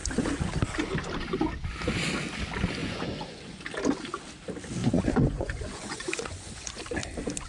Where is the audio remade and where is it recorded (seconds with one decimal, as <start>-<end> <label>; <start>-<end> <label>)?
0.0-2.8 recorded; 2.8-3.6 remade; 3.6-4.8 recorded; 4.8-6.8 remade; 6.8-7.5 recorded